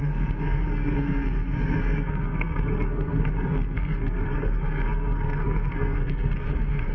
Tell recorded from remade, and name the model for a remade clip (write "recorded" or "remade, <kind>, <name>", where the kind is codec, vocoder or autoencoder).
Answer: remade, codec, SNAC